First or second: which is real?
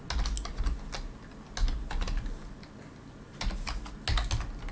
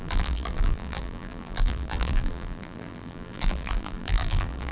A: first